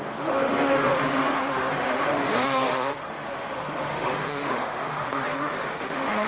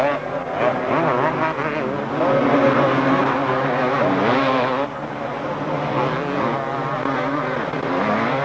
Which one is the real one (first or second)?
second